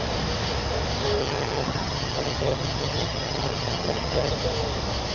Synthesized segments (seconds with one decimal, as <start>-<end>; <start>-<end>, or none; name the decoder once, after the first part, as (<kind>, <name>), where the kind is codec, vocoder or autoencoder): 1.2-4.3 (vocoder, HiFi-GAN)